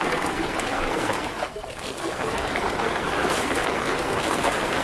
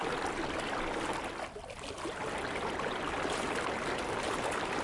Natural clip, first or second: second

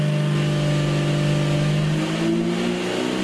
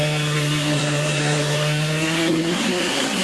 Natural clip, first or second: first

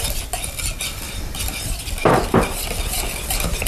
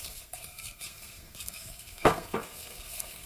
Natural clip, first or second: first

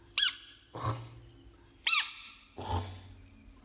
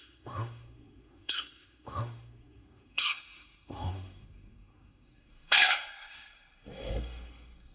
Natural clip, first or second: first